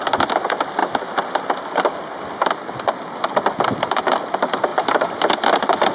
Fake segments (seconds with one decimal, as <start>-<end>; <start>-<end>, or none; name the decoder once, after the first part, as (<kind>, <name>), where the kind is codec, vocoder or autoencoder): none

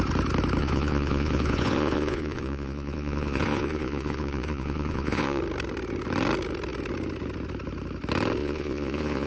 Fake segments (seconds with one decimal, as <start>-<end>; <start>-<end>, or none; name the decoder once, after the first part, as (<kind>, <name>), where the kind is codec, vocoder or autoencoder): 0.6-5.4 (vocoder, Vocos); 8.4-9.3

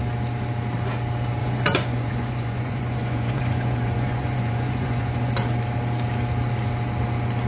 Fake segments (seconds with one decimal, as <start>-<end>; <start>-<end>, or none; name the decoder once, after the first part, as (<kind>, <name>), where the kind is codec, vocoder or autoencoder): 1.4-5.3 (vocoder, Vocos)

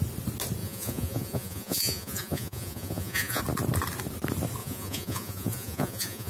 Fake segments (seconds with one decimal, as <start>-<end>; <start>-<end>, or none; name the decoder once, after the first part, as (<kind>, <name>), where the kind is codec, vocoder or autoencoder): 0.6-3.4 (vocoder, Vocos); 4.6-6.3

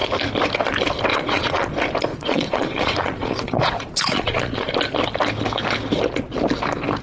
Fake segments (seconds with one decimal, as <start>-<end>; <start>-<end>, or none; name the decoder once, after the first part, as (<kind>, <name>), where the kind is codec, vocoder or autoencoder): 1.1-1.7 (vocoder, Vocos); 2.1-4.7

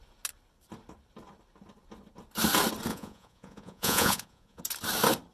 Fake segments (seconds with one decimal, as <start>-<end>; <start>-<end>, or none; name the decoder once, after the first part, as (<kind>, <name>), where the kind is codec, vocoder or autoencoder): 2.9-4.6 (vocoder, Vocos)

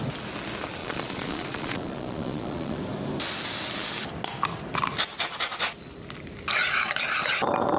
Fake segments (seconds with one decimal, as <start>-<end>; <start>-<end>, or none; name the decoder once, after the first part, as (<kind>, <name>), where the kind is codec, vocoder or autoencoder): 0.8-2.8 (vocoder, Vocos)